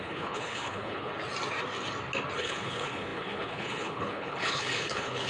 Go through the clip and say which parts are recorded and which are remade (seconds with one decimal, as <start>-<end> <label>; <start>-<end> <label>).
0.0-1.1 remade; 1.1-2.4 recorded; 2.4-5.3 remade